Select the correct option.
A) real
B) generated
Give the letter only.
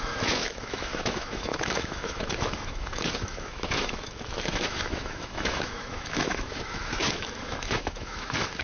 B